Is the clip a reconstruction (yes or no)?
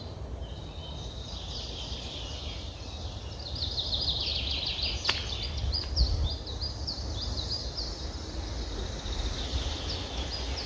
no